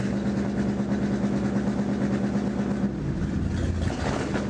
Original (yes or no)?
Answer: yes